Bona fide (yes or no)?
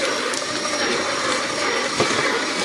no